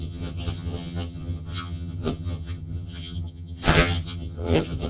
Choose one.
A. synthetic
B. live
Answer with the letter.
A